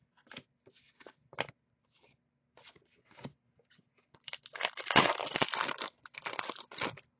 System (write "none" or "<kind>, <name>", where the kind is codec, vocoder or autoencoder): none